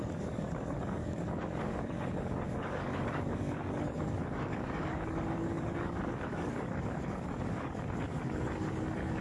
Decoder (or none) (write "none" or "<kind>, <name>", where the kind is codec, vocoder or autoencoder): codec, DAC